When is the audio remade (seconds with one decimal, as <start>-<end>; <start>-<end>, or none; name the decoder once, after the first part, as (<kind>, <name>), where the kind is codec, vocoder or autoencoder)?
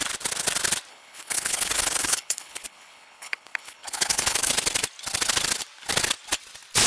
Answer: 0.9-4.5 (codec, HILCodec)